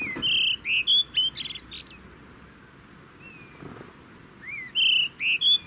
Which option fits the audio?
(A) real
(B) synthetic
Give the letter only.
A